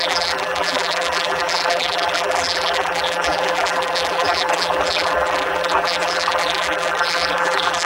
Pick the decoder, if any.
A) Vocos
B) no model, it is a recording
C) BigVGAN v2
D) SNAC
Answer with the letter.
C